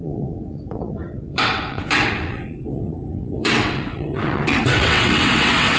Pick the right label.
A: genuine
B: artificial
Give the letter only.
B